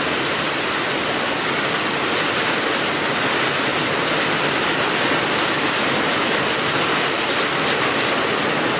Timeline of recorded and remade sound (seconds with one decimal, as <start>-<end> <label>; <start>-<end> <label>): 0.0-8.8 recorded